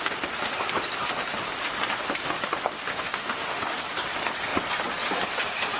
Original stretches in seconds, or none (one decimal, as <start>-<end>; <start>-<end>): 0.0-2.9; 3.8-5.8